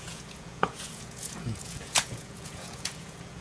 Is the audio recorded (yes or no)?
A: no